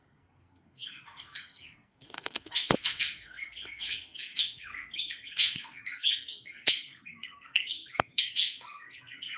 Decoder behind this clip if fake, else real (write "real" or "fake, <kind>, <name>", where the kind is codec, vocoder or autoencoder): fake, codec, SNAC